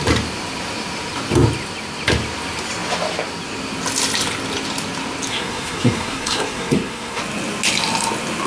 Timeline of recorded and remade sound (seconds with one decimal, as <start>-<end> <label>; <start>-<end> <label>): 0.0-5.3 recorded; 5.3-7.2 remade; 7.2-8.5 recorded